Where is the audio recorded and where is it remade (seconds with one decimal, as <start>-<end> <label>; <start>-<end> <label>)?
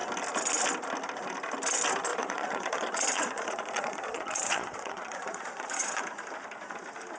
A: 0.0-2.1 recorded; 2.1-6.0 remade; 6.0-7.2 recorded